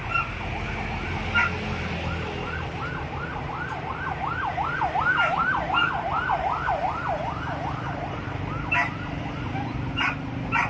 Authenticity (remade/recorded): recorded